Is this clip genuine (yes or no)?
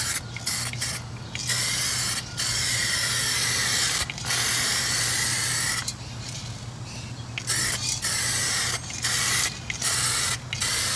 yes